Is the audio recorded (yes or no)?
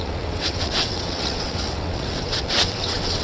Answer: no